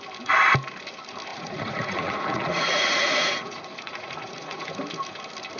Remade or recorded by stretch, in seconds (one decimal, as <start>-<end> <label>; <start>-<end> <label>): 0.0-1.3 recorded; 1.3-4.7 remade; 4.7-5.6 recorded